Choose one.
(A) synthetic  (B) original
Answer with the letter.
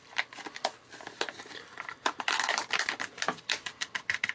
B